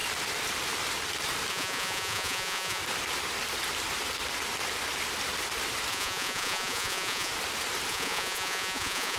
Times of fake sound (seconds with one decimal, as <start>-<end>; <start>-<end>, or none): 1.5-2.8; 5.9-7.3; 7.9-9.2